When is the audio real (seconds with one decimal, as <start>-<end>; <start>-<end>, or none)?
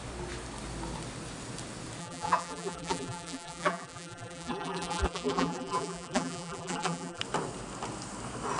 0.0-2.0; 7.2-8.6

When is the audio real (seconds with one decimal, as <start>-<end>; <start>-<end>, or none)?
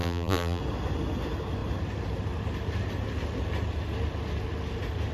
0.6-5.1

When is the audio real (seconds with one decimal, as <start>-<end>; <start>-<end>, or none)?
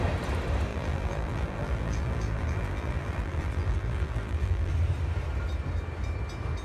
0.0-0.7; 4.7-6.6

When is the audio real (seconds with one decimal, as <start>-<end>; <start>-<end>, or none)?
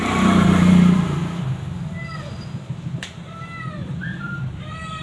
none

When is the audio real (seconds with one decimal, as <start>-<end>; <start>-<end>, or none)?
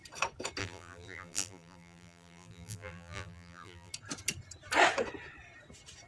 0.0-0.6; 3.9-6.1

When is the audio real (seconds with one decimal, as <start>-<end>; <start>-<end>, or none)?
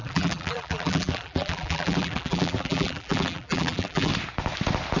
4.1-5.0